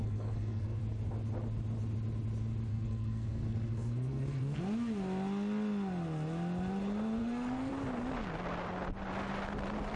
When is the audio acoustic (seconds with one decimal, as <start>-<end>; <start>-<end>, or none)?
0.8-2.7; 4.6-7.2; 7.7-10.0

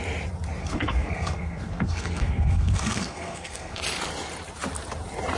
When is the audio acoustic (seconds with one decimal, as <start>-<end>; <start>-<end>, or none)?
0.0-0.6; 3.8-5.4

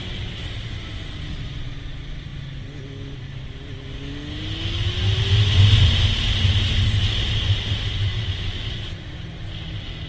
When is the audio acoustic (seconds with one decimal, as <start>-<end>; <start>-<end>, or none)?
0.0-8.1; 8.9-10.1

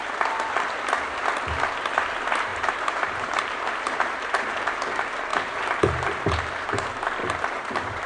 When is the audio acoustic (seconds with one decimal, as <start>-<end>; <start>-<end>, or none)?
0.0-2.5; 4.8-5.3; 6.2-7.2